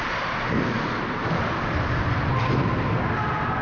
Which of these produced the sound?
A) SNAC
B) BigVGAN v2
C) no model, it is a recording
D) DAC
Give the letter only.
C